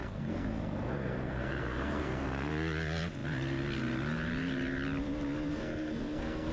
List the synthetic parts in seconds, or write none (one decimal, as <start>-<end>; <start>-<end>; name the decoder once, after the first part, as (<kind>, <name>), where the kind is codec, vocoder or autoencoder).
0.0-2.5 (codec, SNAC); 5.5-6.5